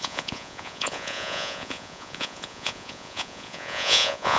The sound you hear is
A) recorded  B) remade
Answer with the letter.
B